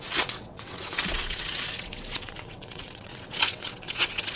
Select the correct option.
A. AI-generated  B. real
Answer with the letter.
A